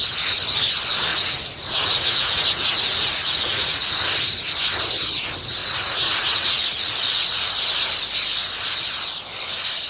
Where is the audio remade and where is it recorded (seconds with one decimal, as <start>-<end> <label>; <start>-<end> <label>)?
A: 0.0-1.1 recorded; 1.1-3.9 remade; 3.9-5.6 recorded; 5.6-7.5 remade; 7.5-9.9 recorded